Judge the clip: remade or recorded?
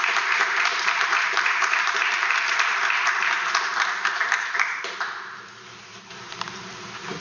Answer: remade